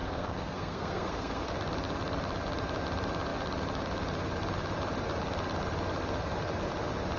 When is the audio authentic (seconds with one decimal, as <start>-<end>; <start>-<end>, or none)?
1.5-7.2